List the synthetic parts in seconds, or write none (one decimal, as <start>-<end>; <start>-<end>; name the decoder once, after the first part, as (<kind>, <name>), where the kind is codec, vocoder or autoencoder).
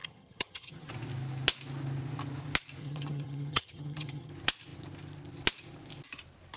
0.0-0.9 (vocoder, HiFi-GAN); 2.8-4.3